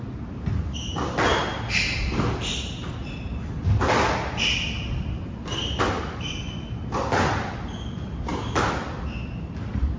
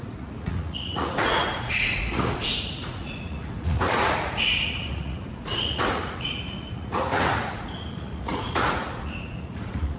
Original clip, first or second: first